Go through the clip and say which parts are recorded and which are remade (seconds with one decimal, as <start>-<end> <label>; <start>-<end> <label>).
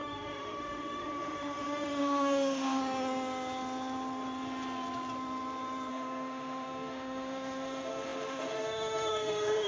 0.0-2.8 remade; 2.8-5.9 recorded; 5.9-9.7 remade